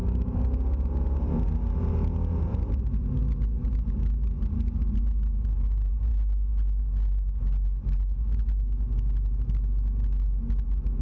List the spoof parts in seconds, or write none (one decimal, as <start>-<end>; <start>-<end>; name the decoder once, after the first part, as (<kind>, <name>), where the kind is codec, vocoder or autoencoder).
none